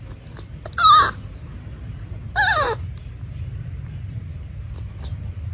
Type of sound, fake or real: real